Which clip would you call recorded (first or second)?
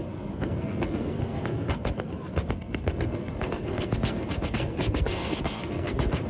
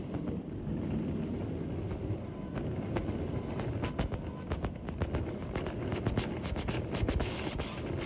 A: second